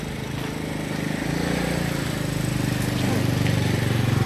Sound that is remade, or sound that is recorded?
recorded